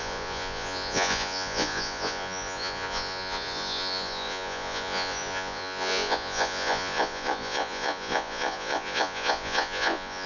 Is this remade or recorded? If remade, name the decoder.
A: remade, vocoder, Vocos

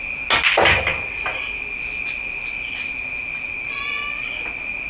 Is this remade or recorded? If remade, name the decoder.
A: recorded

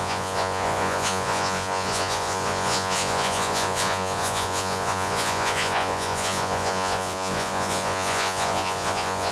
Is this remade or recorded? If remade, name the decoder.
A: remade, vocoder, Vocos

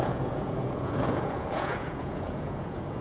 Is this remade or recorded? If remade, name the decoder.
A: remade, vocoder, Vocos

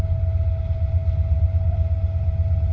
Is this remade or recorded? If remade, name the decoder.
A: recorded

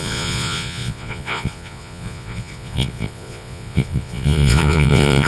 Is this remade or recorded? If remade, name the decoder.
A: remade, vocoder, Vocos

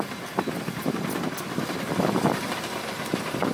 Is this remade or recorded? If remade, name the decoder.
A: recorded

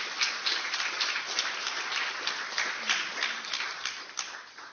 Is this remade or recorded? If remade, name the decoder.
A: recorded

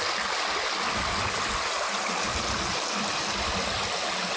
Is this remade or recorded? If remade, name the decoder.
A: recorded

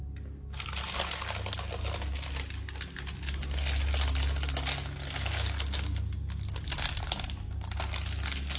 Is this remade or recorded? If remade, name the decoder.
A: recorded